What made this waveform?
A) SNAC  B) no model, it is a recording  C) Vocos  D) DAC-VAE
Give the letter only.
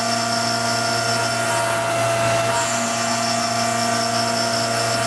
B